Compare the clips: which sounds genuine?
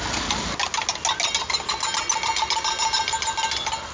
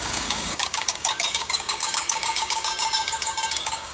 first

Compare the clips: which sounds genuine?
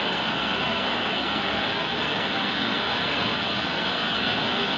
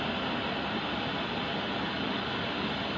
second